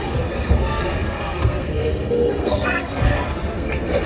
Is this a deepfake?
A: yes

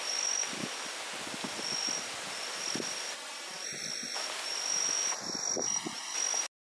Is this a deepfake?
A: no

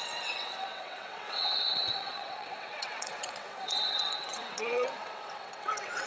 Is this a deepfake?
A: yes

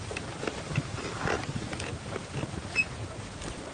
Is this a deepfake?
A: no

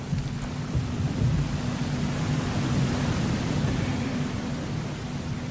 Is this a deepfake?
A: yes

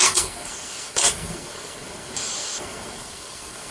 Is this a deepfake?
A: yes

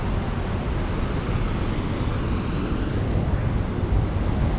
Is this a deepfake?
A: no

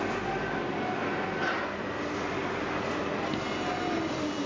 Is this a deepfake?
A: no